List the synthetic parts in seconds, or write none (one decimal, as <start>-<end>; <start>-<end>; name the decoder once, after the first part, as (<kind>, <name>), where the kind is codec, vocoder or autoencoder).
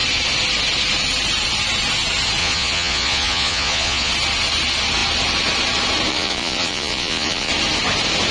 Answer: 2.4-4.1 (vocoder, Vocos); 6.1-7.5